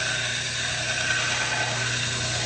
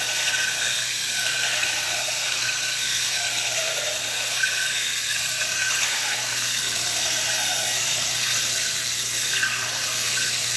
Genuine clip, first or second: first